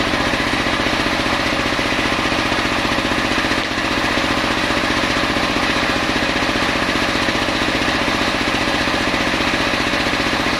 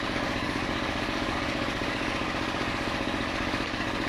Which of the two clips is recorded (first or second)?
first